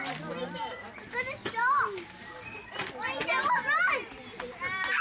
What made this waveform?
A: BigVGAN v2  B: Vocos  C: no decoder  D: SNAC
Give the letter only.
C